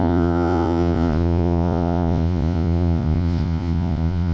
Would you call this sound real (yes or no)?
no